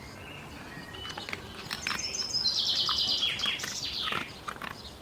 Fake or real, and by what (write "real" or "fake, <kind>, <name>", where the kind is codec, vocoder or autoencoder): real